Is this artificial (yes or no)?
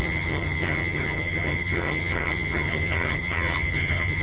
yes